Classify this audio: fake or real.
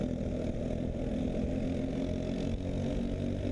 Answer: real